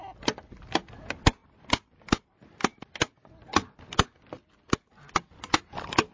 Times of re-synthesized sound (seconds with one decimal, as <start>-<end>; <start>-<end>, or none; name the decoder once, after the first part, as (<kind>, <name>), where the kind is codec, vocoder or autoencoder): none